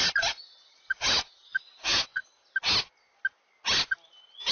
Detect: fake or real real